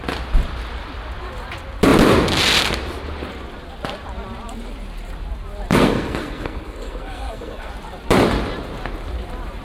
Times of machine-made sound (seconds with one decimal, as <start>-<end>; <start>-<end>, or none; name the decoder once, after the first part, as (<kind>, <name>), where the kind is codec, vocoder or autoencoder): 5.7-7.7 (codec, SNAC)